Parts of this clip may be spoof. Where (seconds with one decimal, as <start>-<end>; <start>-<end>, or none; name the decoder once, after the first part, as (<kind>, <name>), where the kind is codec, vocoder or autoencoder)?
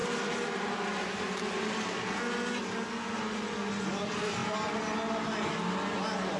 0.0-1.4 (vocoder, BigVGAN v2)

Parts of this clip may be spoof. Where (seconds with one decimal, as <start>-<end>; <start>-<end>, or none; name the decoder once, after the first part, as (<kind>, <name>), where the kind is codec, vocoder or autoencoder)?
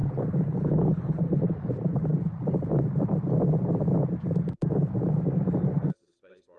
0.0-1.4 (codec, HILCodec)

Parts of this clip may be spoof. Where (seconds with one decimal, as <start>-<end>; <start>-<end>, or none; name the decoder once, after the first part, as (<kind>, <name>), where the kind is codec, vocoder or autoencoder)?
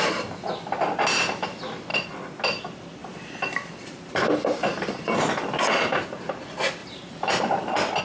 1.9-2.4 (vocoder, BigVGAN v2); 3.0-5.6; 6.8-8.0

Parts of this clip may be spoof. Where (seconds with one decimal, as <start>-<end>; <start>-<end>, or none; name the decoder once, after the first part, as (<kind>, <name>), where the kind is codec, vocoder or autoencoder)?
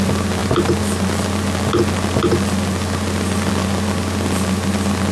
none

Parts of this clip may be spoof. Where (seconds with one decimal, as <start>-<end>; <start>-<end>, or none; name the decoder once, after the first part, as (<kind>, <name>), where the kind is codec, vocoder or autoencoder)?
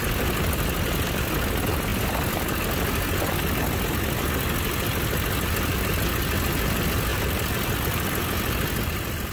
none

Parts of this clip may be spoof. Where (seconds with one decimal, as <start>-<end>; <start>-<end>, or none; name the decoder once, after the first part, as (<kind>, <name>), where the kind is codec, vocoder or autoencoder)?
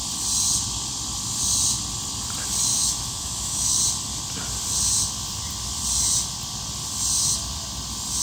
2.7-3.8 (autoencoder, DAC-VAE)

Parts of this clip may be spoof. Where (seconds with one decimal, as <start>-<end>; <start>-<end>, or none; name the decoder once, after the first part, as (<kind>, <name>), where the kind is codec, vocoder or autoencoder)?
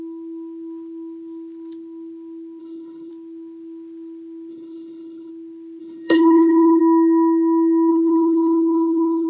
2.6-3.1 (codec, HILCodec); 4.5-5.3; 5.8-6.8; 7.9-9.3